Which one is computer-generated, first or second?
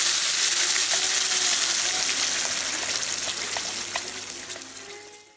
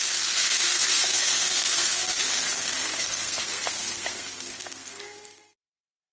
second